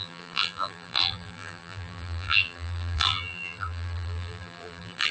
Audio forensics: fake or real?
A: fake